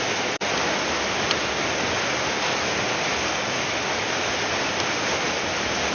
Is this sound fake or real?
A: real